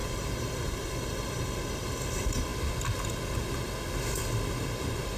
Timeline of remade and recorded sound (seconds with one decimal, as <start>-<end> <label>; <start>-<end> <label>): 0.0-2.5 remade; 2.5-5.2 recorded